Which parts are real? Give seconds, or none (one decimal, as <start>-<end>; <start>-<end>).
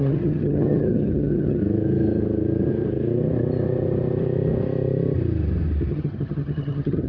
1.6-5.9